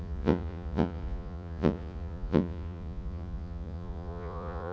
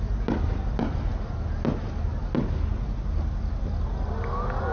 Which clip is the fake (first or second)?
first